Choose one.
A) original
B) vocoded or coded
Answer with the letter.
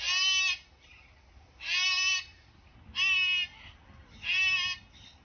A